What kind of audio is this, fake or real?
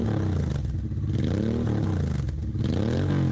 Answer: real